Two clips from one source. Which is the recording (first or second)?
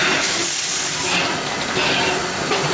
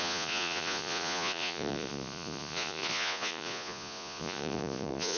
first